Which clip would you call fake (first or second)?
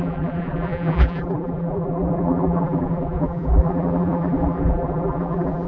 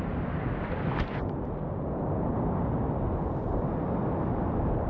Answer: first